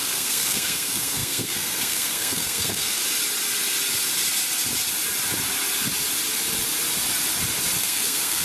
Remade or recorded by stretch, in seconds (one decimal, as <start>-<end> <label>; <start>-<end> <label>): 0.0-3.0 remade; 3.0-7.8 recorded; 7.8-8.4 remade